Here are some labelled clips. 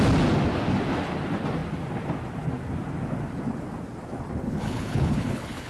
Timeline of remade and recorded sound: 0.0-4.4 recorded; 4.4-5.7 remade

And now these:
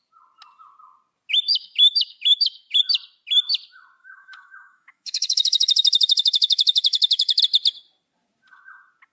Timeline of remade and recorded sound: 0.0-1.5 recorded; 1.5-2.8 remade; 2.8-4.0 recorded; 4.0-7.4 remade; 7.4-9.1 recorded

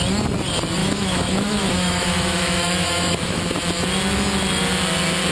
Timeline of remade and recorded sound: 0.0-0.8 recorded; 0.8-3.4 remade; 3.4-5.3 recorded

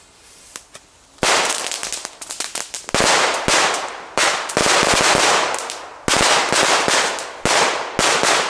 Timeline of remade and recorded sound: 0.0-8.5 recorded

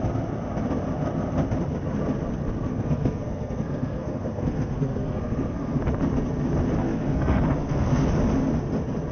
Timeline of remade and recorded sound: 0.0-2.7 recorded; 2.7-5.8 remade; 5.8-6.8 recorded; 6.8-8.1 remade; 8.1-9.1 recorded

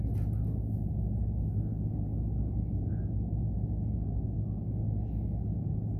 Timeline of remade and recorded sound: 0.0-6.0 recorded